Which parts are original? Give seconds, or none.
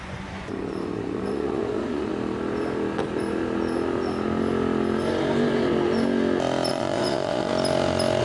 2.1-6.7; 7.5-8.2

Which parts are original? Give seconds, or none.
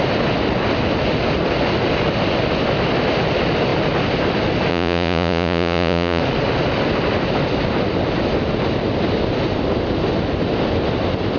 0.0-4.7; 6.2-11.4